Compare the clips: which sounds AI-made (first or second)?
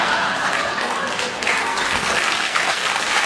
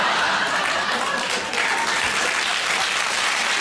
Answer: first